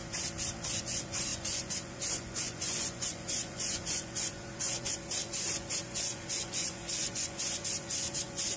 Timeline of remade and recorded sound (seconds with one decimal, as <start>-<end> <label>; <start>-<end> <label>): 0.0-0.8 recorded; 0.8-8.6 remade